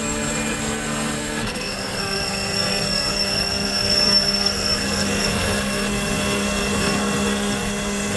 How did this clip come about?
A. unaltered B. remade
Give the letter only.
B